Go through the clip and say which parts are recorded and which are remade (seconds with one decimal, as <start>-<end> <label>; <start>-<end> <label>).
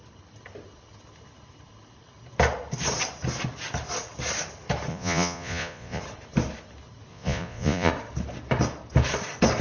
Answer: 0.0-4.9 recorded; 4.9-6.0 remade; 6.0-7.1 recorded; 7.1-7.9 remade; 7.9-9.6 recorded